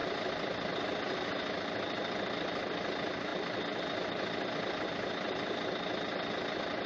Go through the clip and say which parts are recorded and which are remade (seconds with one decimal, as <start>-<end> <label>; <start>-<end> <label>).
0.0-6.9 recorded